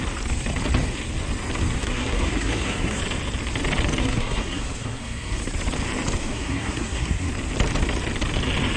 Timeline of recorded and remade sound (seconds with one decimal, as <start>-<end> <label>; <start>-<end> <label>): 0.0-1.8 recorded; 1.8-3.0 remade; 3.0-4.0 recorded; 4.0-5.4 remade; 5.4-6.2 recorded; 6.2-7.3 remade; 7.3-8.8 recorded